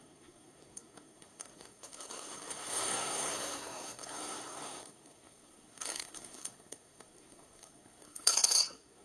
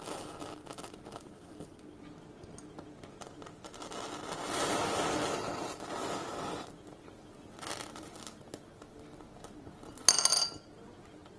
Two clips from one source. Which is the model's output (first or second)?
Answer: first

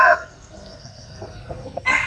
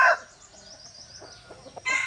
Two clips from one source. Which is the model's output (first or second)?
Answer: first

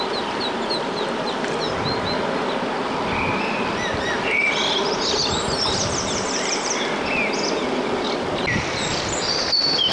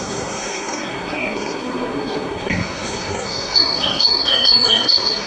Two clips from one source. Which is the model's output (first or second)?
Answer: second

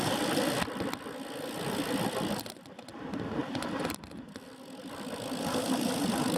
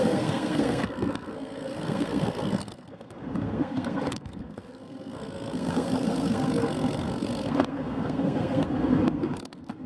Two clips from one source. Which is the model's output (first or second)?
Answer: second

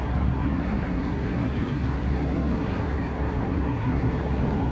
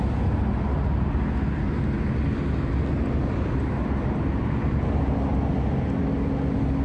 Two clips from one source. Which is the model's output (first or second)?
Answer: first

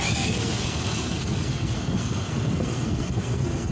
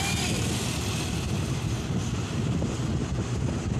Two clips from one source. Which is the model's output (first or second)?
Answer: first